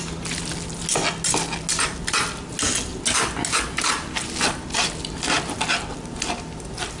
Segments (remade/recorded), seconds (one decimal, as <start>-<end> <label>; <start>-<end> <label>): 0.0-7.0 recorded